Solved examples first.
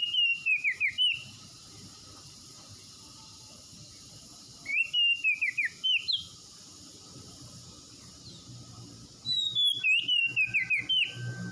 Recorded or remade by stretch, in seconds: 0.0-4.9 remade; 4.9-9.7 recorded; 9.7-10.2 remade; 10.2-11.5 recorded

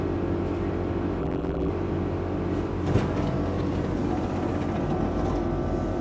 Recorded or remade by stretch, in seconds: 0.0-1.2 recorded; 1.2-1.7 remade; 1.7-6.0 recorded

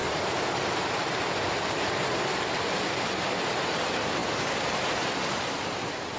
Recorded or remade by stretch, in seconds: 0.0-4.2 recorded; 4.2-4.9 remade; 4.9-6.2 recorded

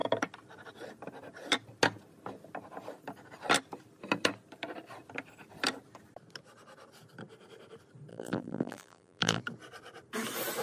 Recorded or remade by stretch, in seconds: 0.0-8.1 recorded; 8.1-9.4 remade; 9.4-10.6 recorded

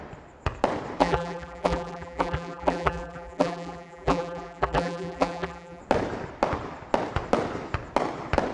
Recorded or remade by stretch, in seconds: 0.0-1.0 recorded; 1.0-5.8 remade; 5.8-8.5 recorded

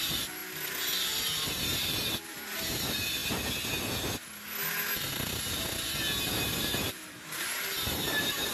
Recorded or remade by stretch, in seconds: 0.0-0.4 remade; 0.4-1.6 recorded; 1.6-3.2 remade; 3.2-6.2 recorded; 6.2-8.5 remade

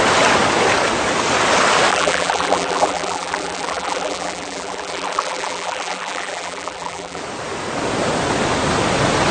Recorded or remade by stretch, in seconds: 0.0-1.9 recorded; 1.9-7.2 remade; 7.2-9.3 recorded